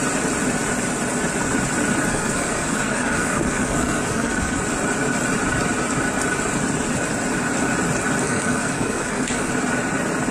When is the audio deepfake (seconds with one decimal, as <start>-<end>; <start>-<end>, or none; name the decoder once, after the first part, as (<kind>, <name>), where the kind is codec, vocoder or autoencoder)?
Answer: 2.1-4.6 (codec, SNAC); 8.2-9.5

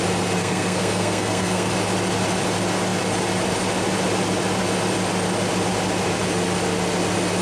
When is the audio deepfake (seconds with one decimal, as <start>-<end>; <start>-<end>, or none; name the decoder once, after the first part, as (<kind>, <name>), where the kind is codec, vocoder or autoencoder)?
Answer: 0.4-1.7 (codec, SNAC)

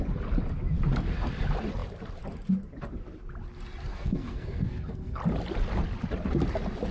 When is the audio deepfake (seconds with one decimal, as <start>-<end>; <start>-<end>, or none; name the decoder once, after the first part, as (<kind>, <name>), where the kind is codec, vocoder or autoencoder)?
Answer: 3.9-5.2 (codec, SNAC)